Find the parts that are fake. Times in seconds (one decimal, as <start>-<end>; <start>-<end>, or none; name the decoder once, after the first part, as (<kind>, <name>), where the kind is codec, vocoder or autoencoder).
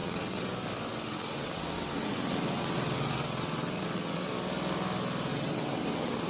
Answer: 0.0-0.5 (vocoder, WaveNeXt); 0.9-4.3; 5.3-6.3